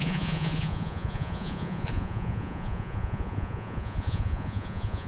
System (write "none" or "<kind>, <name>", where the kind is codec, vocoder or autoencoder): vocoder, Vocos